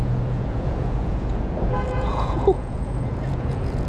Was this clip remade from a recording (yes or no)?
yes